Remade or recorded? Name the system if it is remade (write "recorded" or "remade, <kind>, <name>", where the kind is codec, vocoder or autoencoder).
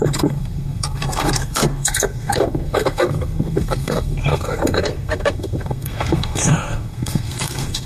remade, codec, SNAC